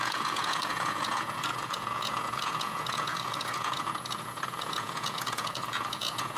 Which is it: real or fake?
fake